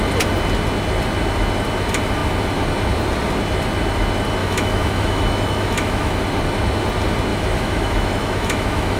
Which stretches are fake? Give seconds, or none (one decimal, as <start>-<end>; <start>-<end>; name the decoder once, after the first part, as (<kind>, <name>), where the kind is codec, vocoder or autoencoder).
4.4-6.2 (autoencoder, DAC-VAE); 7.3-9.0